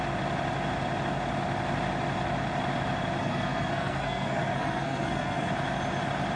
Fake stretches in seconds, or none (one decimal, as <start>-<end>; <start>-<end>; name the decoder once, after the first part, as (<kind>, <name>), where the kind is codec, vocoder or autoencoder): 3.2-5.5 (codec, SNAC)